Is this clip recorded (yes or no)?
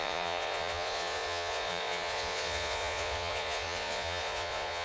no